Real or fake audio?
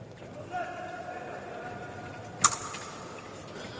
fake